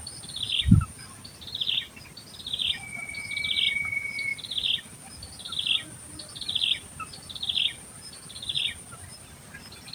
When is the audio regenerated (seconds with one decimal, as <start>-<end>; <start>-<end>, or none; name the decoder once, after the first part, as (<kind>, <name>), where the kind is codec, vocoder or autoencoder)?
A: none